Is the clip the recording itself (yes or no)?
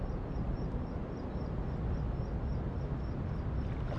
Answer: yes